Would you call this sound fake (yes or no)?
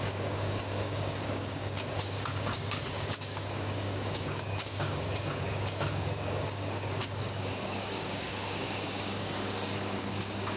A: yes